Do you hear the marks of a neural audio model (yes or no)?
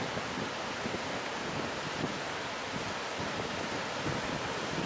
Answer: no